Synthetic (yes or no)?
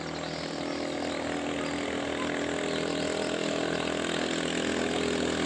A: no